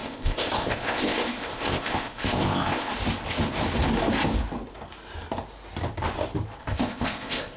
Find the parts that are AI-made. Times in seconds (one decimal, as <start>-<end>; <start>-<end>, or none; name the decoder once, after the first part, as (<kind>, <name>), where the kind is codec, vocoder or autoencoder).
0.0-2.9 (codec, ZipCodec); 6.6-7.6